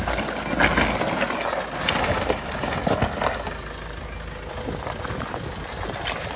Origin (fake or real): real